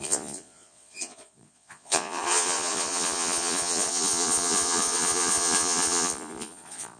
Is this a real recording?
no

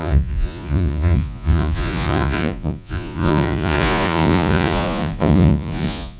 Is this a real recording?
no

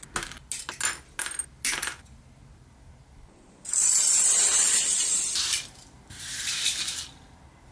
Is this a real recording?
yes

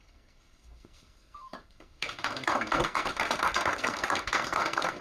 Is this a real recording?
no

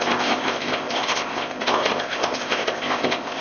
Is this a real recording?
no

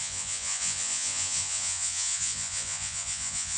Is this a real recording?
no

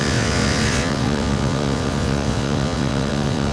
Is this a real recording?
no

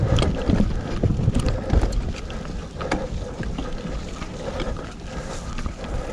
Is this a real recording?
yes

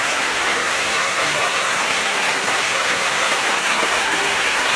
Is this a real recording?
no